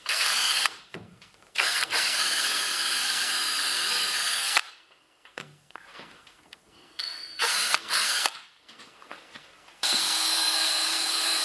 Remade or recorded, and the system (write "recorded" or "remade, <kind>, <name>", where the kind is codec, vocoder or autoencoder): remade, codec, SNAC